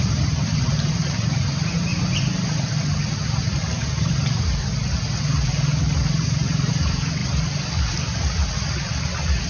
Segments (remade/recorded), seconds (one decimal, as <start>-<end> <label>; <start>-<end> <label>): 0.0-1.9 remade; 1.9-6.7 recorded; 6.7-7.2 remade; 7.2-9.5 recorded